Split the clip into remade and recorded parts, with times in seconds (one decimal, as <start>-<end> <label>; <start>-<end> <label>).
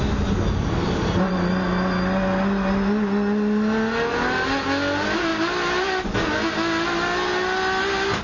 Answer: 0.0-8.2 recorded